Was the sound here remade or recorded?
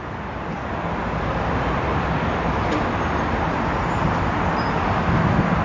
recorded